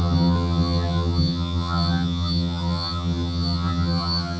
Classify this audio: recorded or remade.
remade